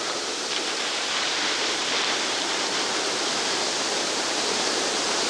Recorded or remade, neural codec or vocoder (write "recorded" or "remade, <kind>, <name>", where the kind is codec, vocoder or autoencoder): remade, vocoder, BigVGAN v2